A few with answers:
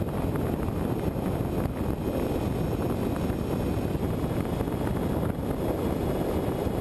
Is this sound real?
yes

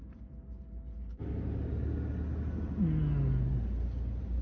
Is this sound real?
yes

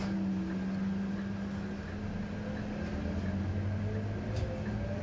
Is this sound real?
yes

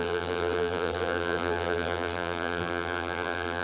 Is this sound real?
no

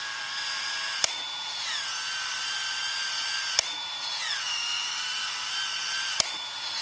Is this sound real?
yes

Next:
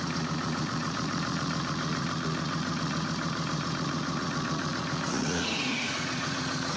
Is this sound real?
no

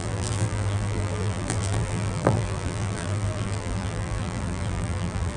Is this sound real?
no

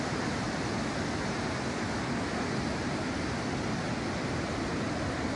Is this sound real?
yes